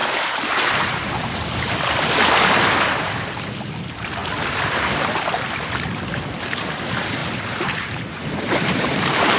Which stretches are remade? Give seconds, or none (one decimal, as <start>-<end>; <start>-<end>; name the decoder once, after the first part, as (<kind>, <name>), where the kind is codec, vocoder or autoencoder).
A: 0.0-1.9 (vocoder, BigVGAN v2); 7.2-9.4